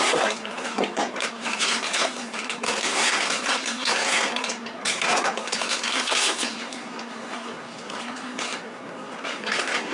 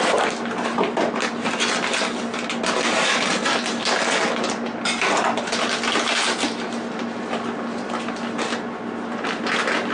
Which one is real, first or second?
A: second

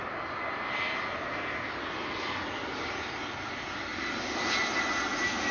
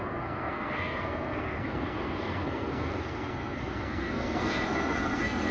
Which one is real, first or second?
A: first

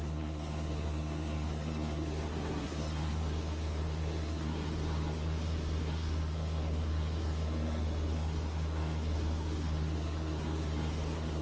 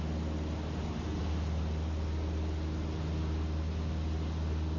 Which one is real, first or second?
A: second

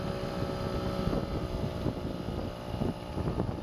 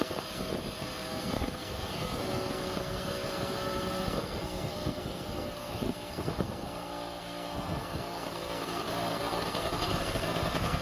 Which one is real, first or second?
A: first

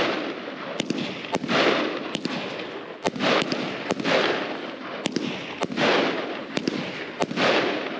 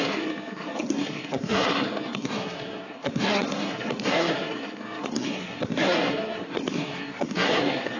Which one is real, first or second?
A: first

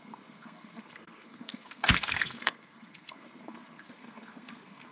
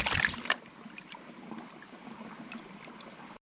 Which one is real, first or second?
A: second